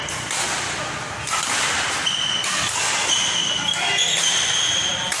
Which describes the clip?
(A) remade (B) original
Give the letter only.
B